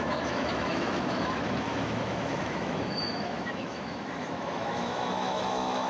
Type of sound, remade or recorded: remade